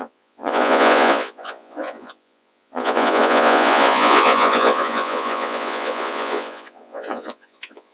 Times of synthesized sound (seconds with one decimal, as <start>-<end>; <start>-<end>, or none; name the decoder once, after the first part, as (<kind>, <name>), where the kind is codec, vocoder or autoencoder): 0.0-7.9 (vocoder, Vocos)